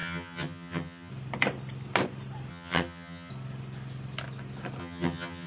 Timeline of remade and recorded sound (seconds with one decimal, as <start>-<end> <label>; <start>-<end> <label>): 0.0-1.1 remade; 1.1-2.5 recorded; 2.5-3.3 remade; 3.3-4.8 recorded; 4.8-5.5 remade